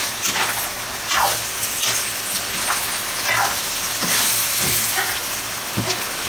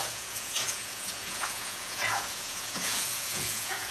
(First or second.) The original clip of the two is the first